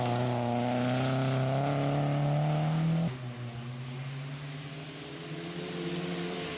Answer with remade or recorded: recorded